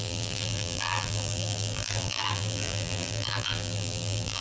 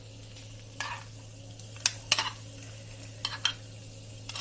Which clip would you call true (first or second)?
second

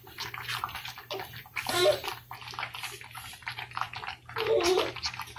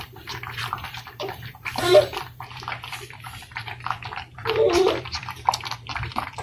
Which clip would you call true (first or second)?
first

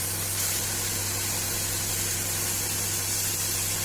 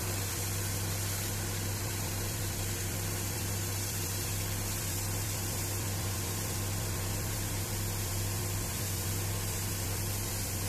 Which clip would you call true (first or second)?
first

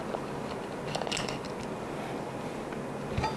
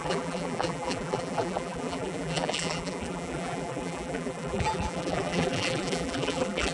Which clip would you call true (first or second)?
first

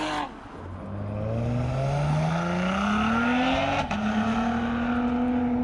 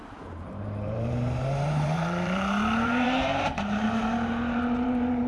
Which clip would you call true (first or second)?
first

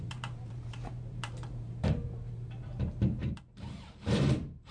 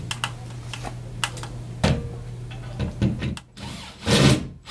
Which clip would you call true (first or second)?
second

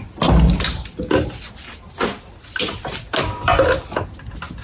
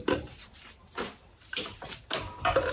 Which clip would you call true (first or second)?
first